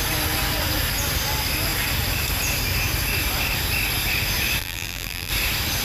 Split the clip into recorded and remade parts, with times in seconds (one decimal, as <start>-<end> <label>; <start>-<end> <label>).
0.0-4.6 recorded; 4.6-5.3 remade; 5.3-5.8 recorded